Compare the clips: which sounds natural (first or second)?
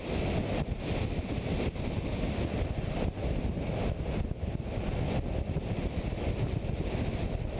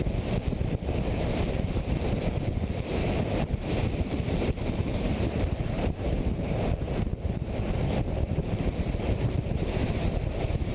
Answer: first